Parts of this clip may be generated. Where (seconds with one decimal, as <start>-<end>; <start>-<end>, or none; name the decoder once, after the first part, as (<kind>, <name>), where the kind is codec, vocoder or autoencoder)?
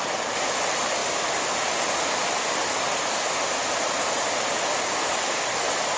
none